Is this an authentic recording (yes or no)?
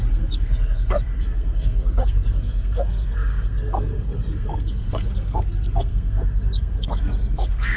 no